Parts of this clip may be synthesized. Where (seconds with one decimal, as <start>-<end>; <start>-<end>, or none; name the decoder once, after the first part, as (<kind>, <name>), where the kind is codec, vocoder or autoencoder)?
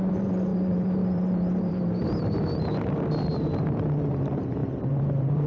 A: 0.0-5.5 (vocoder, BigVGAN v2)